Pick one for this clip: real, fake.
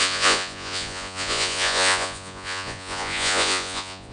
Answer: fake